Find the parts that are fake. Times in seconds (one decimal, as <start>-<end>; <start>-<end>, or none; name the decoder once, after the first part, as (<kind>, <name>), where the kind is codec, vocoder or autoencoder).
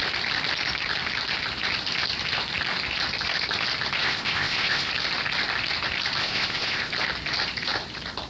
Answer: 4.0-4.9 (codec, ZipCodec); 6.2-6.9